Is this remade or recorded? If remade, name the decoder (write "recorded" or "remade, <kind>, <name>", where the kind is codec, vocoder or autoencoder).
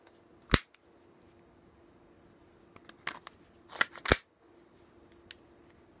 recorded